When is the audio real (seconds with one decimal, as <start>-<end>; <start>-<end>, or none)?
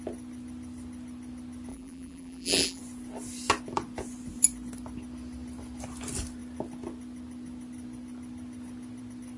0.0-1.7; 2.8-9.4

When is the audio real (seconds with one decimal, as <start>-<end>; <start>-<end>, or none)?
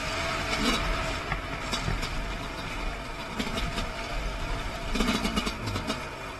0.0-6.4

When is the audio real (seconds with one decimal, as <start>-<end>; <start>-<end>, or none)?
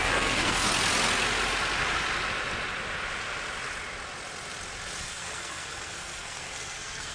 0.7-5.0